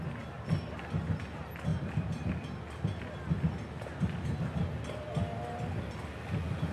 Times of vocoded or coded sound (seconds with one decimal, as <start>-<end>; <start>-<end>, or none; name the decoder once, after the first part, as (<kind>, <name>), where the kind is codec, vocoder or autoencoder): none